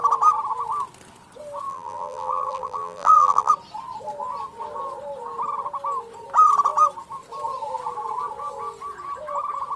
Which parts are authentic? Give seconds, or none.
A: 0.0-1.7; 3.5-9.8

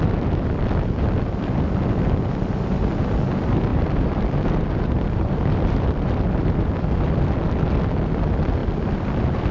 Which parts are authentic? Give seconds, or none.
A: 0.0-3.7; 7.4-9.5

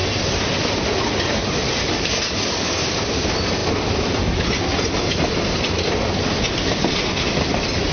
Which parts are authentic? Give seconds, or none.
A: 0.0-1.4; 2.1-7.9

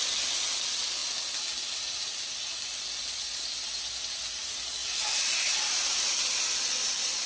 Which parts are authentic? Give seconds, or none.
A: 0.0-4.8; 6.1-7.3

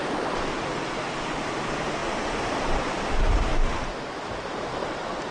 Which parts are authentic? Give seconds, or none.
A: 2.0-2.6

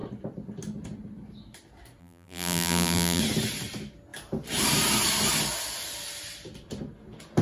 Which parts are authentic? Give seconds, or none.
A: 0.0-2.0; 3.2-7.4